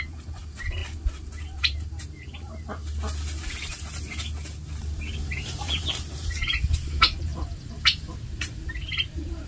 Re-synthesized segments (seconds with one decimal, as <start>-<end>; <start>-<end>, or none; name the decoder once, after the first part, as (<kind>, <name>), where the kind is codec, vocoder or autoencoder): 0.0-0.8 (vocoder, BigVGAN v2); 1.6-2.8; 5.2-9.5